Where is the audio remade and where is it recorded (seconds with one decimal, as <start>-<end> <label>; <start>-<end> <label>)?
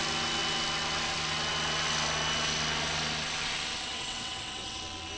0.0-3.9 recorded; 3.9-4.8 remade; 4.8-5.2 recorded